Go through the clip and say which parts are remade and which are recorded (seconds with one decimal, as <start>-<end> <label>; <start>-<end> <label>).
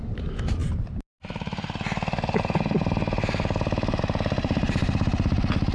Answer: 0.0-5.7 recorded